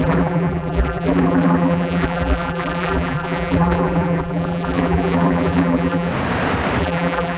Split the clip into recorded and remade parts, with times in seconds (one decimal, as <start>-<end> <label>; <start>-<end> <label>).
0.0-6.1 remade; 6.1-6.8 recorded; 6.8-7.4 remade

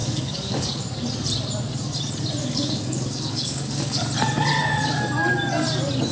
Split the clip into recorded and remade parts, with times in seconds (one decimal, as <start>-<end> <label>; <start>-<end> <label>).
0.0-0.8 remade; 0.8-2.4 recorded; 2.4-4.0 remade; 4.0-6.1 recorded

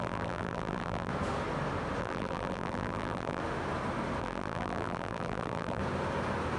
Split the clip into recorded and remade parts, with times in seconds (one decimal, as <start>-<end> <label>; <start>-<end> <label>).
0.0-1.1 remade; 1.1-2.0 recorded; 2.0-3.4 remade; 3.4-4.2 recorded; 4.2-5.8 remade; 5.8-6.6 recorded

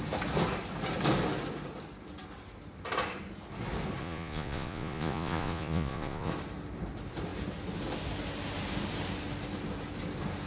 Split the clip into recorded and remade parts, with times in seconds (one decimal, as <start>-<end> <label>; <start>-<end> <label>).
0.0-4.0 recorded; 4.0-6.3 remade; 6.3-10.5 recorded

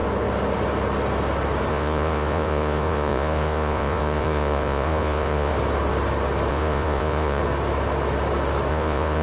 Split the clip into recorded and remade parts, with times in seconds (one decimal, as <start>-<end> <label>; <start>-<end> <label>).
0.0-1.7 recorded; 1.7-5.5 remade; 5.5-6.5 recorded; 6.5-7.4 remade; 7.4-8.7 recorded; 8.7-9.2 remade